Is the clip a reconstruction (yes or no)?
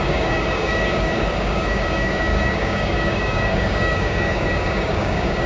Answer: yes